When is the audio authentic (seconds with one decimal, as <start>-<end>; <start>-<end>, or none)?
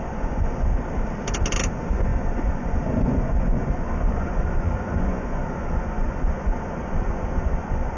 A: 0.7-1.7